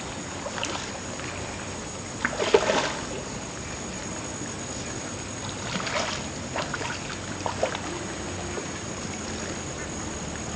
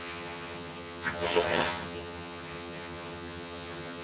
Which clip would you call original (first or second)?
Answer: first